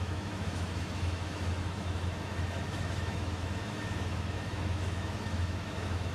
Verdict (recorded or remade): remade